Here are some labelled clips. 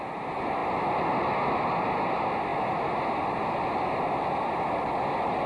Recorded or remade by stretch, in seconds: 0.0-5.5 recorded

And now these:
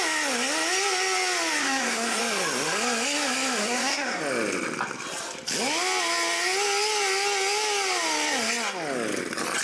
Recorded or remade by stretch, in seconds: 0.0-1.6 recorded; 1.6-2.2 remade; 2.2-3.6 recorded; 3.6-4.2 remade; 4.2-9.6 recorded

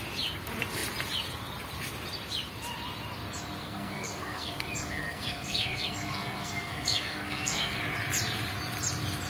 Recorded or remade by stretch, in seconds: 0.0-3.6 recorded; 3.6-7.8 remade; 7.8-9.3 recorded

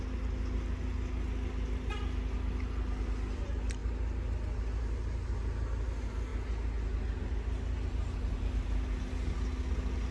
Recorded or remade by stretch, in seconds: 0.0-10.1 recorded

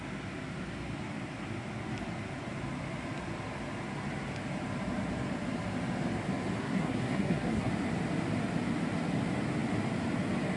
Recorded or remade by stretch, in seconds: 0.0-6.6 recorded; 6.6-7.7 remade; 7.7-10.6 recorded